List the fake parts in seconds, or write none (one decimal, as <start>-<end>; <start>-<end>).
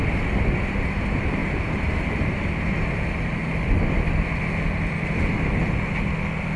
none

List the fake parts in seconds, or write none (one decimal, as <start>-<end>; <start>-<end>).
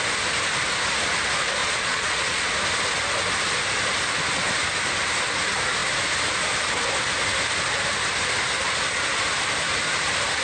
1.6-2.5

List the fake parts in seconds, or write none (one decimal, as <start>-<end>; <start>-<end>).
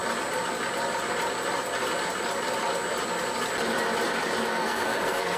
4.5-5.4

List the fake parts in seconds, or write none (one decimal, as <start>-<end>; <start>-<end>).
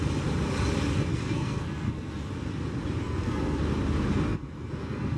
1.1-2.3; 3.0-3.6; 4.3-5.2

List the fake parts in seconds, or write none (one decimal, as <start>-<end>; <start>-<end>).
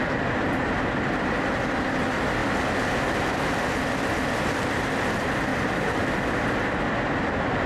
none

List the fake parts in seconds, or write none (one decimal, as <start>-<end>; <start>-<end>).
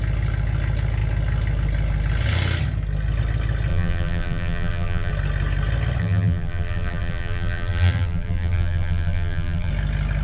3.7-5.1; 6.0-9.7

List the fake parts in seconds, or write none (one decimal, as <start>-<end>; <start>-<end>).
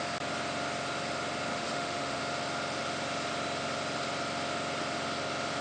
1.5-2.2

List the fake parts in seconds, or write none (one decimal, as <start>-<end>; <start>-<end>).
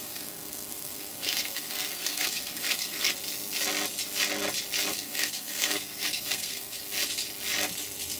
0.0-3.1; 4.9-6.8